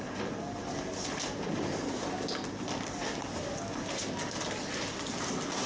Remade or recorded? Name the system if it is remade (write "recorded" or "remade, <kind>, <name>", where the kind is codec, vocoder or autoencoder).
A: recorded